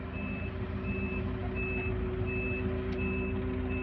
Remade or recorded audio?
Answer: recorded